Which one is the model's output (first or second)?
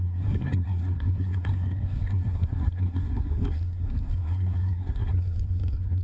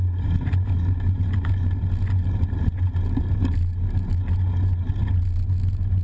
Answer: first